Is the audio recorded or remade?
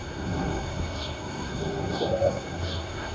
remade